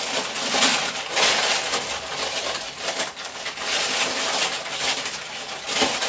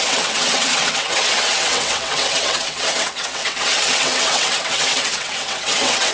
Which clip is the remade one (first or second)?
second